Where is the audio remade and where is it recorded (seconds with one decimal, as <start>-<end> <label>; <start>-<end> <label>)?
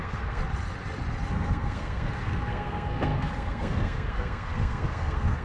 0.0-0.4 remade; 0.4-1.3 recorded; 1.3-5.4 remade